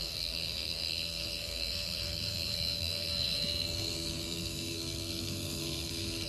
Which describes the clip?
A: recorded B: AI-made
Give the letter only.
B